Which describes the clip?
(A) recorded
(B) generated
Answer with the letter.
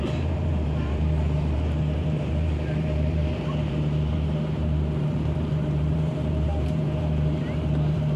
B